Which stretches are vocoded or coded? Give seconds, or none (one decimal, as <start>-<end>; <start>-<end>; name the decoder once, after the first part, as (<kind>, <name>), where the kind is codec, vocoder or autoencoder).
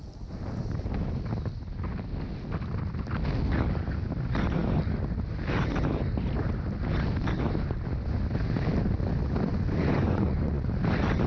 9.5-10.7 (vocoder, Vocos)